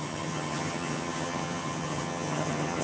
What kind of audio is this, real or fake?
fake